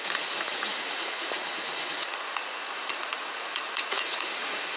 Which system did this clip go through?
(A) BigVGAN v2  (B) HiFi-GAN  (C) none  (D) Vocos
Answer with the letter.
D